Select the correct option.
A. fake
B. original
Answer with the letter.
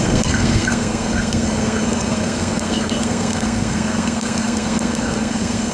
A